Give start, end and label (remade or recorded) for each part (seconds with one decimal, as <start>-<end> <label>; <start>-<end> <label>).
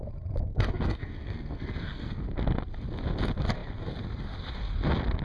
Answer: 0.0-0.5 recorded; 0.5-2.2 remade; 2.2-5.2 recorded